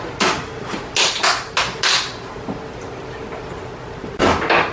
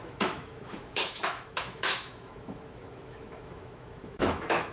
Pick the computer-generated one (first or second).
second